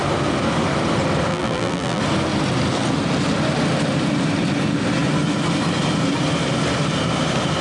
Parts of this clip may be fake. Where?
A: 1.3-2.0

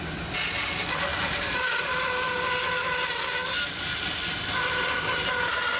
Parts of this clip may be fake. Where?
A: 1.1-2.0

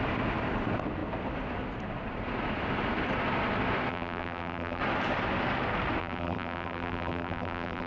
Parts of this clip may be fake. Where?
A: 3.9-4.8; 6.0-7.9

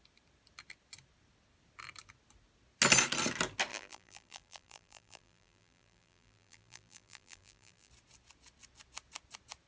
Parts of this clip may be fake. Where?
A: 3.7-7.9